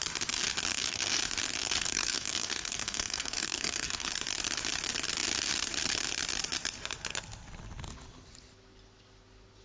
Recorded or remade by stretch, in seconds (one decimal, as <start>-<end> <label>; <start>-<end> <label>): 0.0-0.7 recorded; 0.7-1.2 remade; 1.2-1.6 recorded; 1.6-4.1 remade; 4.1-9.6 recorded